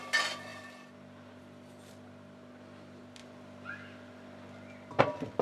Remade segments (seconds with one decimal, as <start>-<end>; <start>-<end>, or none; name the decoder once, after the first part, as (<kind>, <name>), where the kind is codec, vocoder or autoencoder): none